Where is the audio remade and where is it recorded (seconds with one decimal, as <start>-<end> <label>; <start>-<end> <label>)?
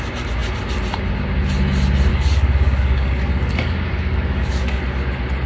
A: 0.0-2.1 recorded; 2.1-4.8 remade; 4.8-5.5 recorded